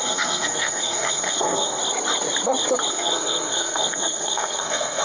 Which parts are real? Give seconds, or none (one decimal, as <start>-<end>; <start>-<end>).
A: 1.8-2.9

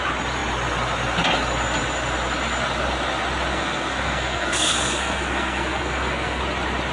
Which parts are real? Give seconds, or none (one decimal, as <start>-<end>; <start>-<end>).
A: 0.0-3.5; 6.4-6.9

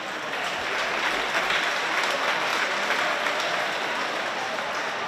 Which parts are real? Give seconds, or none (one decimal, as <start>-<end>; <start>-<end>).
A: 0.0-5.1

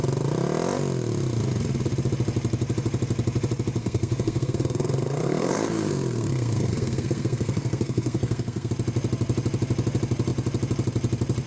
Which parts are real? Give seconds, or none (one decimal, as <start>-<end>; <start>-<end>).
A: 0.0-3.8; 8.7-11.5

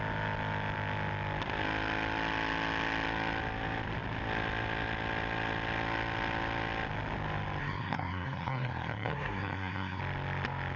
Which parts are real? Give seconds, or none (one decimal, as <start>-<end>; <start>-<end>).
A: 0.0-7.6; 10.0-10.8